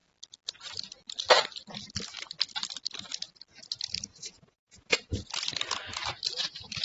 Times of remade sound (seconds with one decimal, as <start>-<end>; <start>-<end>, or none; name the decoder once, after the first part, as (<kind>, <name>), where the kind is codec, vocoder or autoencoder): 4.1-5.3 (vocoder, Vocos)